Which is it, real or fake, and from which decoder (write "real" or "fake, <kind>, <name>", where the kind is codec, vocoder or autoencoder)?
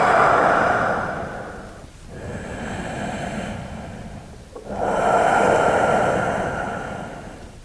real